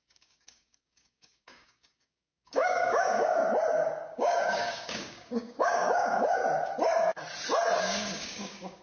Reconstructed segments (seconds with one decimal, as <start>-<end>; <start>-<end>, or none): 0.0-3.4; 4.1-6.4; 7.8-8.8